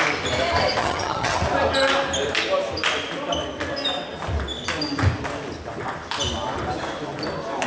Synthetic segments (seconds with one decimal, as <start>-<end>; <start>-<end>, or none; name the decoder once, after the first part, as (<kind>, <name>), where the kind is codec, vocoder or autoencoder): 0.8-1.4 (vocoder, HiFi-GAN)